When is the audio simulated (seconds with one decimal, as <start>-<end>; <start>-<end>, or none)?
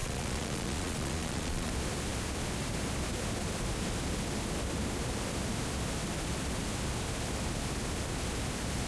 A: 0.0-1.7